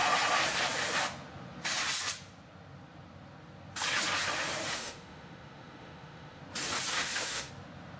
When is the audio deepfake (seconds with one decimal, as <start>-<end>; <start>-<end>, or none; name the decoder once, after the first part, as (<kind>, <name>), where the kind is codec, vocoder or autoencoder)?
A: 4.7-6.4 (autoencoder, DAC-VAE); 6.9-7.5